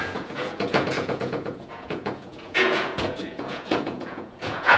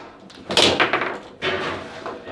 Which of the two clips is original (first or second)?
second